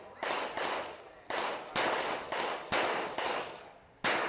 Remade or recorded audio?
recorded